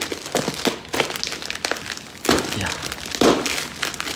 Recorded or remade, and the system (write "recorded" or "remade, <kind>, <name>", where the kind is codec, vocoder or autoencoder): recorded